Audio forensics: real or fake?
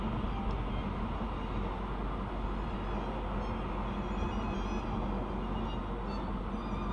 real